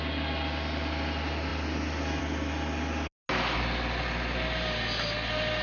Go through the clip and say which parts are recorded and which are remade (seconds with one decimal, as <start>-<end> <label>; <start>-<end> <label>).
0.0-5.6 recorded

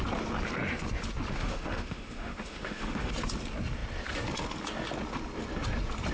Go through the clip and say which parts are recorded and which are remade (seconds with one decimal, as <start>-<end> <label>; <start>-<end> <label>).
0.0-1.3 recorded; 1.3-3.1 remade; 3.1-6.1 recorded

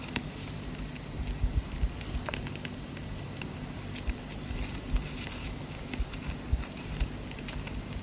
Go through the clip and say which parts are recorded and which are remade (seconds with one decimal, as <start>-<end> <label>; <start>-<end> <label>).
0.0-5.4 recorded; 5.4-5.9 remade; 5.9-8.0 recorded

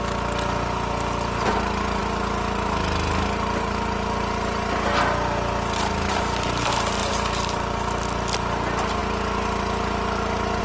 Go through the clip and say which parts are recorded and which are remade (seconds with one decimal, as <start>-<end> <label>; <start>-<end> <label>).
0.0-7.0 recorded; 7.0-8.0 remade; 8.0-10.6 recorded

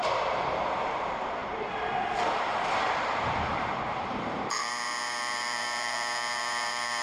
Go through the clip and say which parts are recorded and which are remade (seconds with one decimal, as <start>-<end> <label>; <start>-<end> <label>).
0.0-7.0 remade